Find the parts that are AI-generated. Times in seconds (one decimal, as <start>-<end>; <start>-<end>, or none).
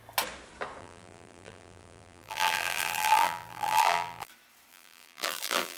0.8-4.3; 4.7-5.8